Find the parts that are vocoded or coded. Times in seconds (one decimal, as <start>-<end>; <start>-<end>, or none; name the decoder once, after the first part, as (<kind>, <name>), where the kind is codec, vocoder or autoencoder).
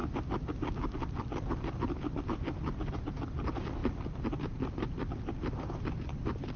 none